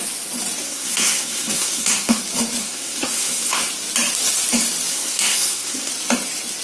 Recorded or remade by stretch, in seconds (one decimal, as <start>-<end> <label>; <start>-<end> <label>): 0.0-0.6 recorded; 0.6-2.2 remade; 2.2-2.6 recorded; 2.6-3.7 remade; 3.7-4.9 recorded; 4.9-5.9 remade; 5.9-6.6 recorded